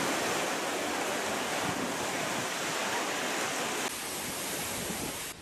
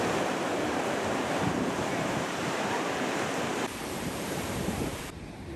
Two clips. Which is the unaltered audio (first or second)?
first